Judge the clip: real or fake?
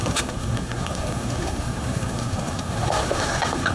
fake